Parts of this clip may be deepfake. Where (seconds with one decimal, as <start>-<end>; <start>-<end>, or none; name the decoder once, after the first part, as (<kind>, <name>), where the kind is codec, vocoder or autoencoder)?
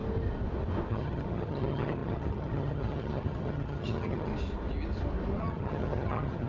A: 0.9-4.3 (vocoder, HiFi-GAN); 5.4-6.5